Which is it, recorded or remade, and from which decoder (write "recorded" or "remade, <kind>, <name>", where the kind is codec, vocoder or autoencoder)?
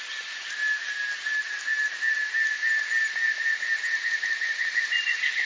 recorded